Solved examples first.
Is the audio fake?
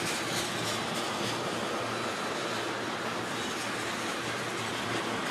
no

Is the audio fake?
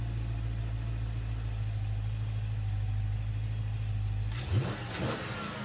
no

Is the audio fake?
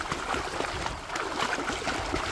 no